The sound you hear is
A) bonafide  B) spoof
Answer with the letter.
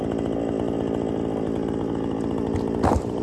A